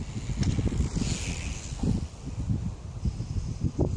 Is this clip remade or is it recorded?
recorded